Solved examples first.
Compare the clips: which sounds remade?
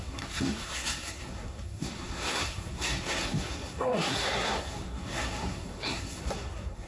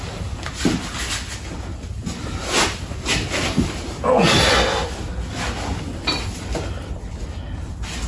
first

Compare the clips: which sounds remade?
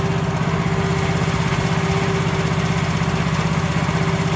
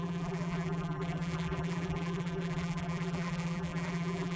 second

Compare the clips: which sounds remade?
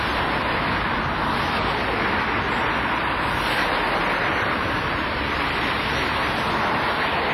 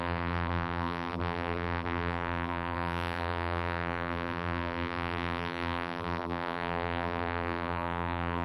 second